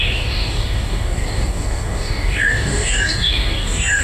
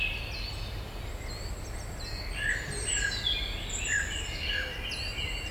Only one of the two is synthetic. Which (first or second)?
first